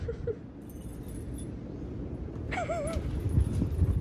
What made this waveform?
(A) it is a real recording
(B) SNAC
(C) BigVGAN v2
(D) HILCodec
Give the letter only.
A